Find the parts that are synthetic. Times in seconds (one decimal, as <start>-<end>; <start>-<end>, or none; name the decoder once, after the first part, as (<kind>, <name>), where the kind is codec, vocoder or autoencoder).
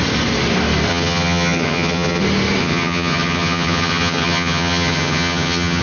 0.9-2.2 (vocoder, HiFi-GAN); 2.6-5.8